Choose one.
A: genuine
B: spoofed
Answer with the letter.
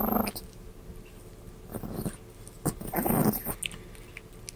A